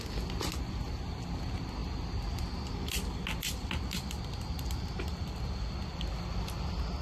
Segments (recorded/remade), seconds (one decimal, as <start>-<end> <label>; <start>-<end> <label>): 0.0-7.0 recorded